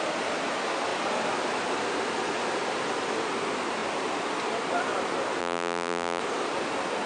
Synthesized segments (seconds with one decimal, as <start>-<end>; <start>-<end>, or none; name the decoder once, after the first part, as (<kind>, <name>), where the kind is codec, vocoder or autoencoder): 5.4-6.2 (vocoder, BigVGAN v2)